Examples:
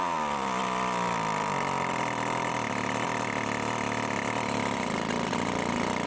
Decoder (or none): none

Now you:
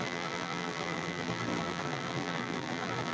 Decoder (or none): vocoder, BigVGAN v2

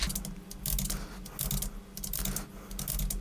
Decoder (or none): none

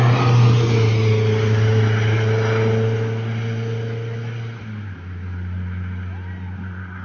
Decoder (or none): none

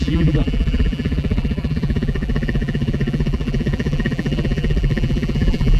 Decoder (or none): vocoder, BigVGAN v2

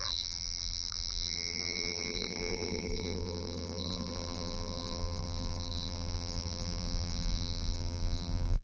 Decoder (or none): vocoder, BigVGAN v2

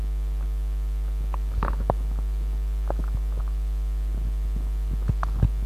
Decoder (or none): none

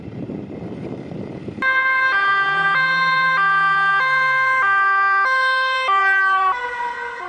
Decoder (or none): vocoder, BigVGAN v2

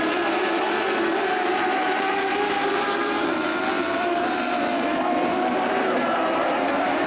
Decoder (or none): vocoder, BigVGAN v2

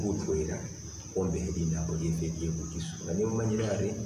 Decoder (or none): none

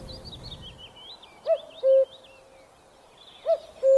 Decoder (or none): none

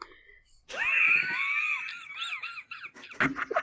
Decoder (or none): none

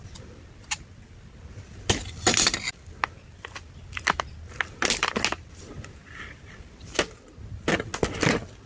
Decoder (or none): none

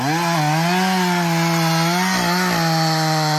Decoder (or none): none